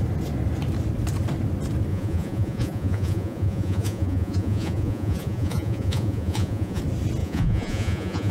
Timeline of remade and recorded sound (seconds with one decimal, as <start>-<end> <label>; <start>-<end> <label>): 0.0-1.9 recorded; 1.9-6.8 remade; 6.8-7.2 recorded; 7.2-8.3 remade